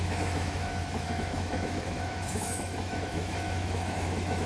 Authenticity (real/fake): fake